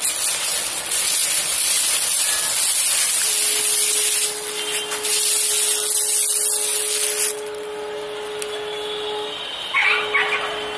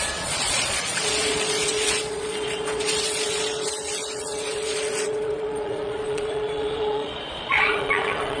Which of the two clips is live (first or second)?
first